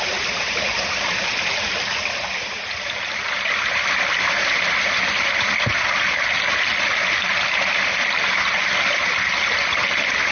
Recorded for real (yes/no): yes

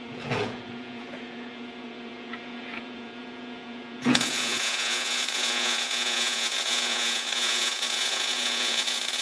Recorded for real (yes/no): no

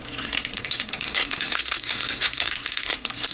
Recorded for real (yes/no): no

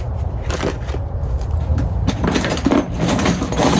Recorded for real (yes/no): no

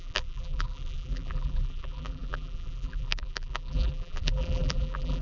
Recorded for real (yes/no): no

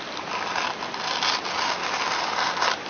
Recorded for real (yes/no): yes